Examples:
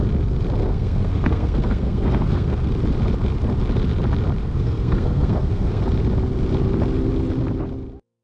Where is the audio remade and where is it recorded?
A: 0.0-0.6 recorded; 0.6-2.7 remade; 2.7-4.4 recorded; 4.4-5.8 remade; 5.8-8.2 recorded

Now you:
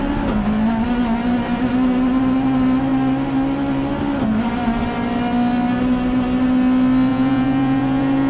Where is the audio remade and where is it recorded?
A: 0.0-7.1 recorded; 7.1-8.3 remade

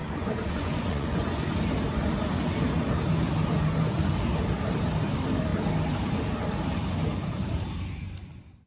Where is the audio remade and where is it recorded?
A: 0.0-1.5 remade; 1.5-8.7 recorded

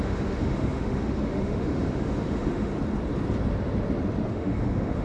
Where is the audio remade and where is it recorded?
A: 0.0-2.7 remade; 2.7-4.3 recorded; 4.3-5.0 remade

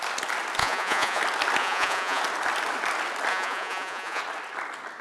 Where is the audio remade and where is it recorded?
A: 0.0-0.6 recorded; 0.6-1.2 remade; 1.2-1.6 recorded; 1.6-2.2 remade; 2.2-3.3 recorded; 3.3-4.2 remade; 4.2-5.0 recorded

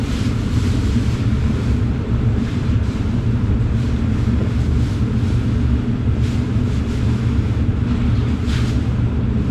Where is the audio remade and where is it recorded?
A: 0.0-4.0 remade; 4.0-9.5 recorded

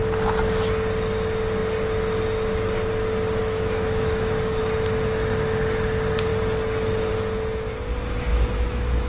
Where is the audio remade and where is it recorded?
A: 0.0-3.4 recorded; 3.4-4.6 remade; 4.6-8.3 recorded; 8.3-9.1 remade

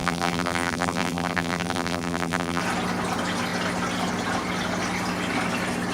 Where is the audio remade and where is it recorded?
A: 0.0-2.6 remade; 2.6-5.9 recorded